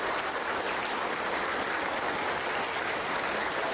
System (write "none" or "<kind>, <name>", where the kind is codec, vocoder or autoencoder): none